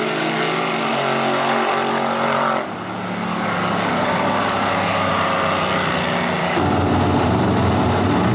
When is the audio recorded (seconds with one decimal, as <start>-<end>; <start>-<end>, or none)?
0.0-3.3; 5.1-6.4; 6.9-8.3